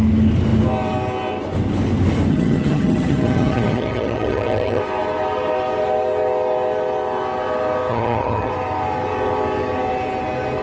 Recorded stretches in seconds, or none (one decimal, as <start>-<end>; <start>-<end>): 0.0-2.3; 4.8-7.9; 8.5-10.6